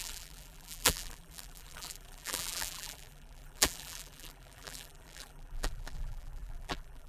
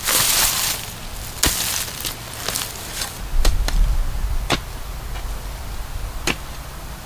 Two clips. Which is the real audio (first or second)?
second